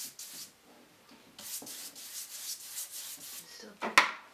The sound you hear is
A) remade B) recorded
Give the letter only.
B